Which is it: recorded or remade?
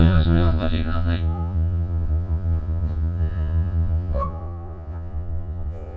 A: remade